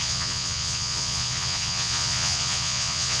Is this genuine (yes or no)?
no